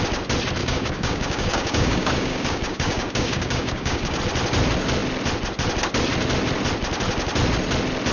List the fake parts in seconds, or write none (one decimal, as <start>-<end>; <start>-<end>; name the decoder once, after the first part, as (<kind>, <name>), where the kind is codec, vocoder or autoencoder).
0.6-4.2 (codec, DAC)